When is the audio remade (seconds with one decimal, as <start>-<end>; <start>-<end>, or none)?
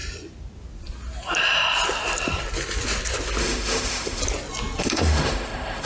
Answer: 3.4-4.2; 4.8-5.9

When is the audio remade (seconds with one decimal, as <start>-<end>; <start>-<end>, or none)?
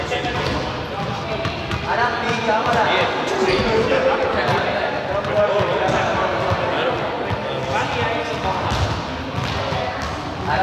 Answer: none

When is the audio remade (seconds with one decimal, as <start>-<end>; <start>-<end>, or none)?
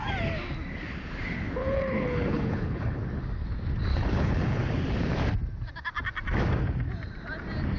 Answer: 1.6-3.0; 3.9-4.6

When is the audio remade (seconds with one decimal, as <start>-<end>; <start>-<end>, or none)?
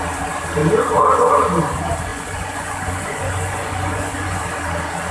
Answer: 2.1-4.4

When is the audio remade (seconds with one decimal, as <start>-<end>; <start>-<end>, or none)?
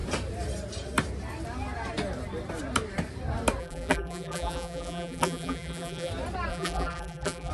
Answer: 3.6-6.1; 6.5-7.5